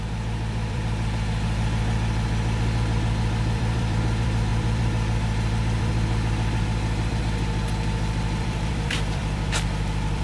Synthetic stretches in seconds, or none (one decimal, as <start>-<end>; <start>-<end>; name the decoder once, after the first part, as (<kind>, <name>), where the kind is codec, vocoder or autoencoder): 0.0-10.2 (vocoder, BigVGAN v2)